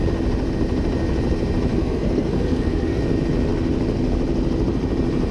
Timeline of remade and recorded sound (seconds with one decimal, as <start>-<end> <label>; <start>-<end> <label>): 0.0-1.7 recorded; 1.7-3.0 remade; 3.0-5.3 recorded